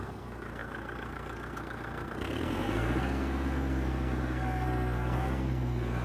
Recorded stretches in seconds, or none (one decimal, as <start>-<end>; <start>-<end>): none